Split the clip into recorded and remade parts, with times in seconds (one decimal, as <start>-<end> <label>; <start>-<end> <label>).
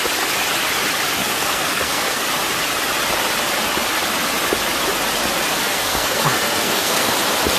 0.0-1.2 recorded; 1.2-2.2 remade; 2.2-5.6 recorded; 5.6-7.1 remade; 7.1-7.6 recorded